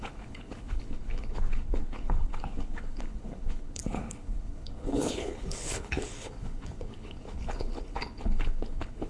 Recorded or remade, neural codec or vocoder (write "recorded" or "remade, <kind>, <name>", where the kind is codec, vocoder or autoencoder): remade, codec, HILCodec